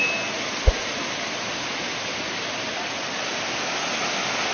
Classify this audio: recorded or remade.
recorded